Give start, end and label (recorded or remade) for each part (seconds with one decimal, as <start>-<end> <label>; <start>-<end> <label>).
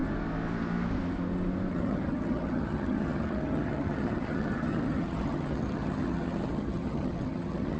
0.0-1.7 recorded; 1.7-7.8 remade